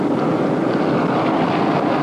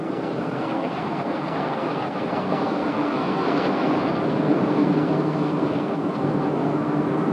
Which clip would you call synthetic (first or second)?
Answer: second